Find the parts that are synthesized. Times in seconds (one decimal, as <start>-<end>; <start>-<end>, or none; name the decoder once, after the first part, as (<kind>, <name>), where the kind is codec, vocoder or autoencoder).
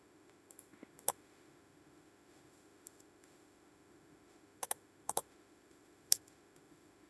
0.0-7.1 (autoencoder, DAC-VAE)